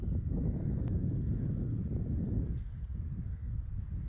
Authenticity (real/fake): real